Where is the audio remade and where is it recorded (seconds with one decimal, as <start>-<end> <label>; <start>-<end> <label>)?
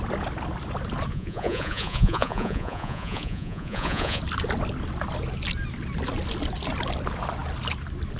0.0-1.1 recorded; 1.1-4.2 remade; 4.2-8.2 recorded